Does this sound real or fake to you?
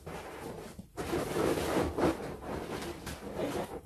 real